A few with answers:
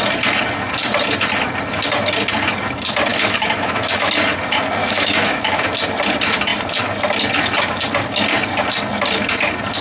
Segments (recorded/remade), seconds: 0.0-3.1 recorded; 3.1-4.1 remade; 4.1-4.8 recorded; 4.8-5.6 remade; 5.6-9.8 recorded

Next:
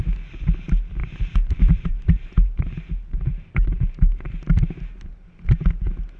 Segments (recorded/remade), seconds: 0.0-1.0 recorded; 1.0-4.3 remade; 4.3-6.2 recorded

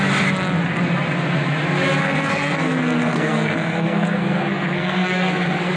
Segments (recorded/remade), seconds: 0.0-2.0 recorded; 2.0-5.8 remade

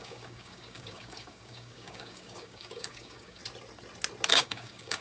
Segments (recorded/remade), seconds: 0.0-3.4 remade; 3.4-4.3 recorded; 4.3-5.0 remade

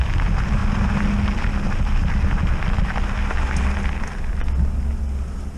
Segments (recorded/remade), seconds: 0.0-5.6 recorded

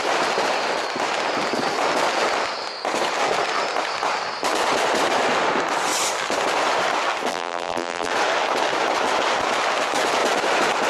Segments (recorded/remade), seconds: 0.0-7.3 recorded; 7.3-8.1 remade; 8.1-10.9 recorded

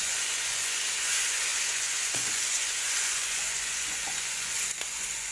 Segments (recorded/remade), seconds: 0.0-5.3 remade